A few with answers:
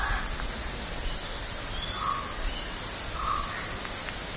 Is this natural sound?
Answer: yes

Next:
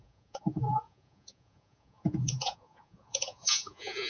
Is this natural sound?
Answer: no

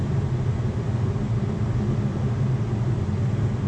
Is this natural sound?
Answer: yes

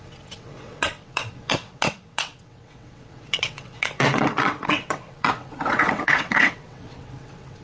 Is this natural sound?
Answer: no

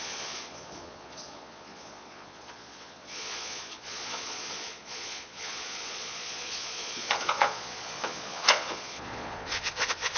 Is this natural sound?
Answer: no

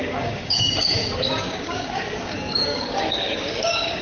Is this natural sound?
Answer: no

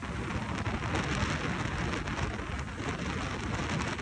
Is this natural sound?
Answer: yes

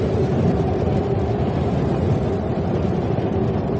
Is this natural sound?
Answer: yes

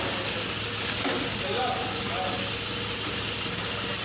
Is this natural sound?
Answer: yes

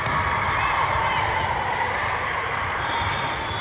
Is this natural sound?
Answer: no